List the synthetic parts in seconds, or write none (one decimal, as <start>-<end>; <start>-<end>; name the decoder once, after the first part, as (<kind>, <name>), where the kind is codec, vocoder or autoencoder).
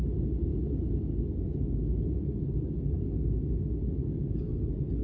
none